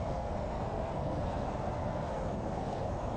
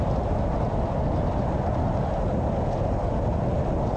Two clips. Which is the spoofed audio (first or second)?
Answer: first